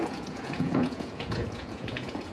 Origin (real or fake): fake